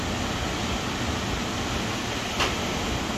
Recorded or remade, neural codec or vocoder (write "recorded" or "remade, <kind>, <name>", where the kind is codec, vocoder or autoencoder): recorded